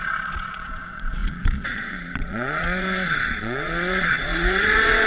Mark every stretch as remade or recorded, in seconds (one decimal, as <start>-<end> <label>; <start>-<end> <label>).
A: 0.0-5.1 remade